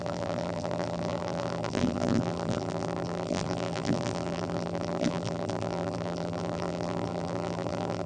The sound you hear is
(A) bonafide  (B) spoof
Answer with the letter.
B